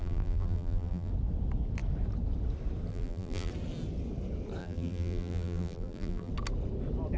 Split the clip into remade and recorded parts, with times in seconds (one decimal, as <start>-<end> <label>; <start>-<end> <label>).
0.0-1.1 remade; 1.1-2.9 recorded; 2.9-3.5 remade; 3.5-4.6 recorded; 4.6-6.3 remade; 6.3-7.2 recorded